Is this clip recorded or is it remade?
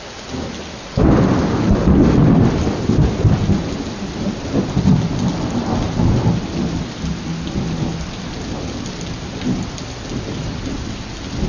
recorded